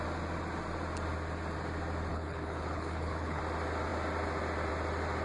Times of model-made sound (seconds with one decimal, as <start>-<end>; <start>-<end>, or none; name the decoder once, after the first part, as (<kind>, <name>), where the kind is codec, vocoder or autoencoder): 2.1-3.4 (codec, HILCodec)